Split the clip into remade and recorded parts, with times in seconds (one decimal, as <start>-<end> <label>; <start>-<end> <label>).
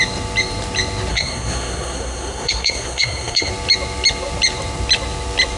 0.0-1.1 recorded; 1.1-3.5 remade; 3.5-5.6 recorded